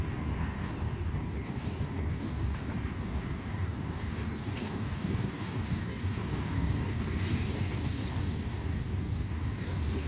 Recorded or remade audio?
remade